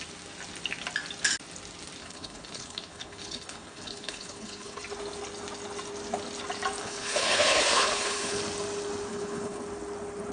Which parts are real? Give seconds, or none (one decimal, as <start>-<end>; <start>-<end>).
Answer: 0.0-2.0; 4.8-6.8; 8.4-9.1; 9.6-10.3